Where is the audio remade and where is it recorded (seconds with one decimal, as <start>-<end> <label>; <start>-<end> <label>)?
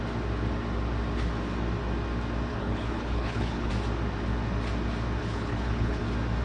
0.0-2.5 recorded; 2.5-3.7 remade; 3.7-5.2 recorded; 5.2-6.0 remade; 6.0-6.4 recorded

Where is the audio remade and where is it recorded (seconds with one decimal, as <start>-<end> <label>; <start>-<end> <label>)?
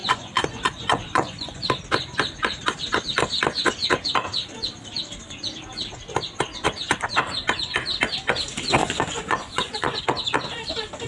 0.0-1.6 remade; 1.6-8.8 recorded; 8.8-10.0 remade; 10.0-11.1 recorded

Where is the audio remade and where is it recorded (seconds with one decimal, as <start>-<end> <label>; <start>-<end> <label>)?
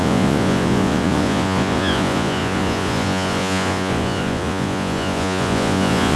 0.0-6.2 remade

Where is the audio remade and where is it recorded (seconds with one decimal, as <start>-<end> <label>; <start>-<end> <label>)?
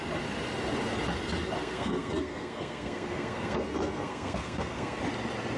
0.0-1.6 recorded; 1.6-5.0 remade; 5.0-5.6 recorded